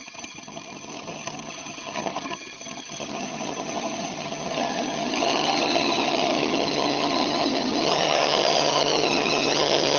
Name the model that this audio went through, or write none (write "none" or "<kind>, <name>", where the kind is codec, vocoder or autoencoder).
vocoder, HiFi-GAN